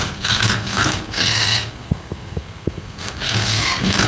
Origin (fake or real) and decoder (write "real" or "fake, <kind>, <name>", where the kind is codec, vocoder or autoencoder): fake, codec, SNAC